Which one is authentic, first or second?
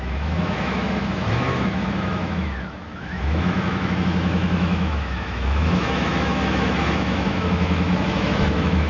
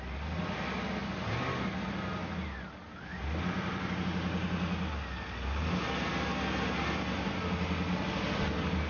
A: second